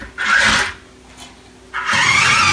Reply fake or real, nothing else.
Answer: real